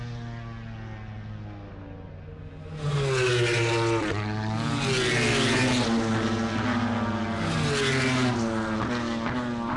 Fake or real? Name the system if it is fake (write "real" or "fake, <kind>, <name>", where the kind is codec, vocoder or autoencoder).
real